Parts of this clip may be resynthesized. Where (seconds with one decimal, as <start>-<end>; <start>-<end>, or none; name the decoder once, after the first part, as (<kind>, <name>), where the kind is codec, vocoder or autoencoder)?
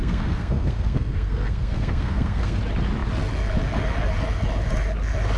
0.0-2.6 (codec, SNAC)